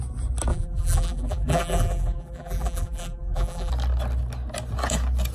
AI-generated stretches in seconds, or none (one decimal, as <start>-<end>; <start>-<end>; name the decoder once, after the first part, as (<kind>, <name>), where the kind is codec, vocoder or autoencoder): 0.5-3.7 (vocoder, BigVGAN v2)